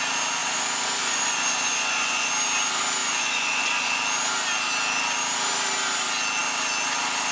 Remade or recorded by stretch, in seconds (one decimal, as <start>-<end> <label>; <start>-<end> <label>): 0.0-0.4 recorded; 0.4-2.3 remade; 2.3-3.0 recorded; 3.0-4.0 remade; 4.0-7.3 recorded